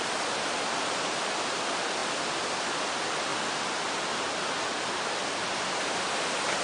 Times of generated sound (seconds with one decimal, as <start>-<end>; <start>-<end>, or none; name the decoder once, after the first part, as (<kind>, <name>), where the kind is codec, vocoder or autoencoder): none